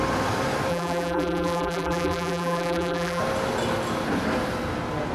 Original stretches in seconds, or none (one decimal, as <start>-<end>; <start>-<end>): 0.0-0.7; 3.2-5.1